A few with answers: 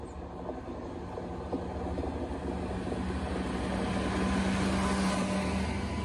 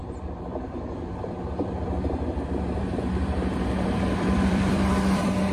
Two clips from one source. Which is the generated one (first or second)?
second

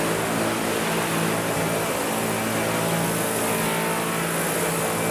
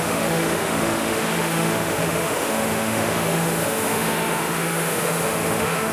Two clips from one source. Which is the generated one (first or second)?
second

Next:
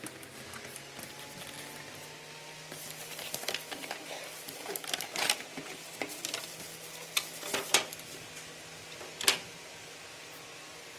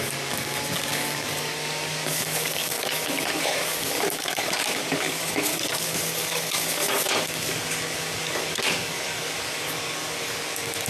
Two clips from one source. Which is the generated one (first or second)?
second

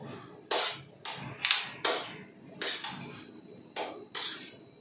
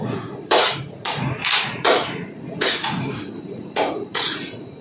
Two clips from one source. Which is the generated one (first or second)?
second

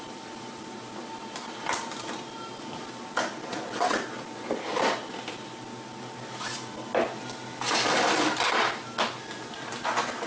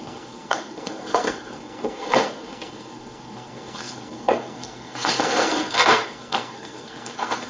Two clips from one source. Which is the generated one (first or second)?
second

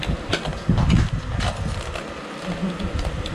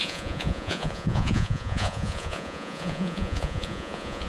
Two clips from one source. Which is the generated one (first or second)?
second